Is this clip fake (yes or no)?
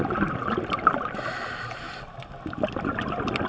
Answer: no